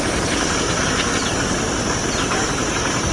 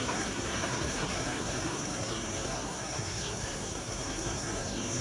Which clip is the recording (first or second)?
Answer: first